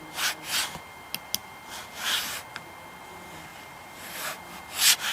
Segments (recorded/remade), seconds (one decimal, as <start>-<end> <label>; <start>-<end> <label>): 0.0-3.5 recorded; 3.5-4.4 remade; 4.4-5.1 recorded